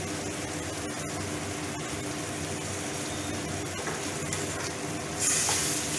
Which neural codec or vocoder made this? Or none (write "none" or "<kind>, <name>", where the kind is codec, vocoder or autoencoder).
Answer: none